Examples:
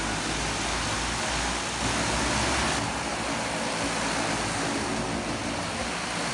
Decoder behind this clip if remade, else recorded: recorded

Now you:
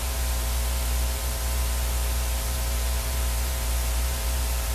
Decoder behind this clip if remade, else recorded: remade, vocoder, BigVGAN v2